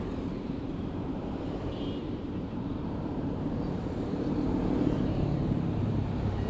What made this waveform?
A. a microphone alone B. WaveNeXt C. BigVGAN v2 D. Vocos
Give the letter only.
C